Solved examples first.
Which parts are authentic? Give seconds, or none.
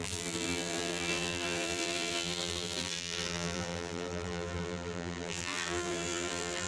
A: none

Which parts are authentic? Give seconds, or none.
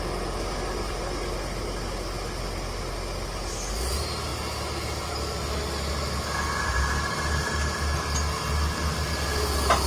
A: 0.0-9.9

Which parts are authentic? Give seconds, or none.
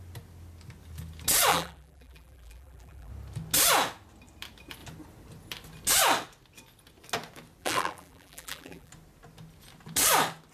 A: 0.0-1.5; 3.1-7.6; 8.9-10.5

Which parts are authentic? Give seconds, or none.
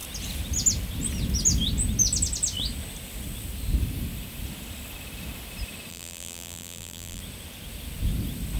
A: 0.0-5.9; 7.2-8.6